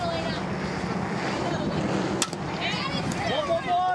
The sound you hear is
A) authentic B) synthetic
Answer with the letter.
A